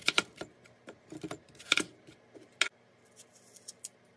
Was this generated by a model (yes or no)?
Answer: no